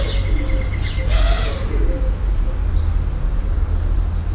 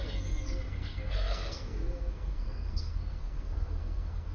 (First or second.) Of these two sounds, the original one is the first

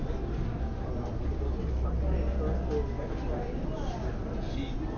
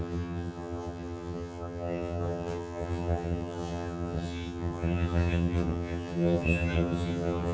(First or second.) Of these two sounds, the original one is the first